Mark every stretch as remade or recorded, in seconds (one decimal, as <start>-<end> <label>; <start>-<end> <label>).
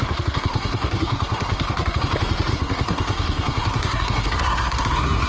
0.0-2.0 remade; 2.0-2.5 recorded; 2.5-5.3 remade